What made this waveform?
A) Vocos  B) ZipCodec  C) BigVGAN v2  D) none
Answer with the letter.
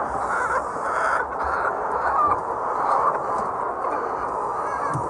D